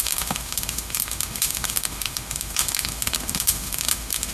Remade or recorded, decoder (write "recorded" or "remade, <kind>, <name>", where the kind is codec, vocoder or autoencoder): remade, autoencoder, DAC-VAE